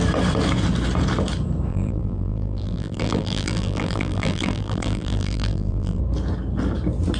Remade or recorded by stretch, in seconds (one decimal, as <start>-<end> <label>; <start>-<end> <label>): 0.0-1.7 recorded; 1.7-6.0 remade; 6.0-7.2 recorded